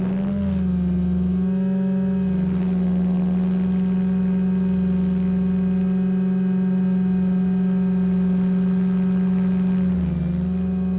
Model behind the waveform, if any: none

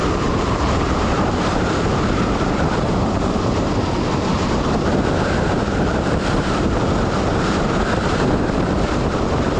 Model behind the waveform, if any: vocoder, BigVGAN v2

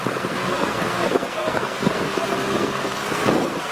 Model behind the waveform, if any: codec, SNAC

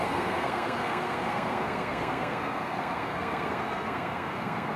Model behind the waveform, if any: codec, SNAC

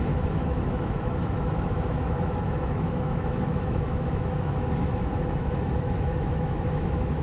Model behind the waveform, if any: autoencoder, DAC-VAE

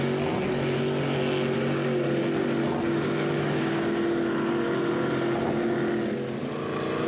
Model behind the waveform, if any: none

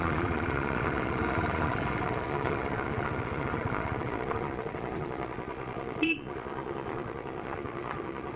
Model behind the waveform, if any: vocoder, Vocos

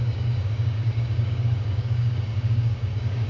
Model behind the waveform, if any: codec, DAC